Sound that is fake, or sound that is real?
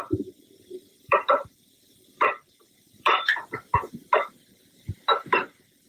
fake